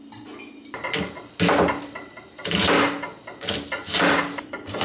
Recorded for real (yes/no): yes